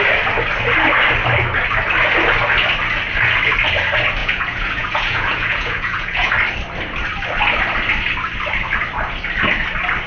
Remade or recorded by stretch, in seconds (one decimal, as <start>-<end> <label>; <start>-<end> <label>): 0.0-4.2 recorded; 4.2-6.3 remade; 6.3-10.1 recorded